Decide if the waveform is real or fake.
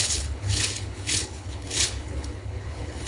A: fake